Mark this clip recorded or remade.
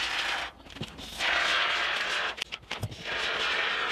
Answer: recorded